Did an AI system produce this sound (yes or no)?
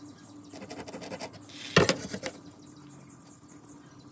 no